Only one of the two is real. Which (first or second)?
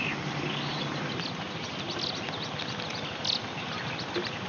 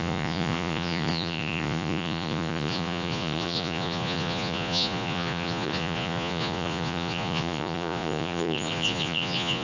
first